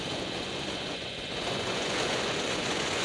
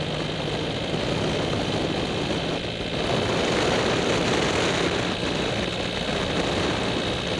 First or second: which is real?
second